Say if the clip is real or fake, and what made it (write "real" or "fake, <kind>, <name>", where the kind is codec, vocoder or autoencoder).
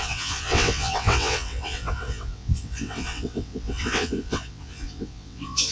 fake, vocoder, WaveNeXt